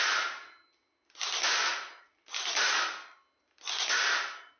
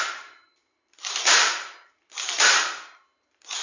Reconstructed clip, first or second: second